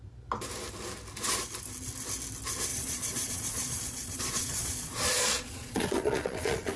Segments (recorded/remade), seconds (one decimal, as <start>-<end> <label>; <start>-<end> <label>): 0.0-2.7 recorded; 2.7-6.8 remade